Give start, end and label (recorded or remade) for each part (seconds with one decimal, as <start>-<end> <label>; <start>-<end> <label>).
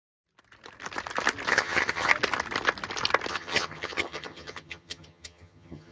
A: 0.0-1.5 recorded; 1.5-2.1 remade; 2.1-3.3 recorded; 3.3-5.9 remade